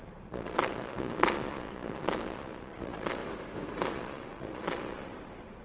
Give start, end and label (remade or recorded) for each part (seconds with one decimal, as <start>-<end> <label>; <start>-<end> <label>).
0.0-3.2 remade; 3.2-3.9 recorded; 3.9-5.6 remade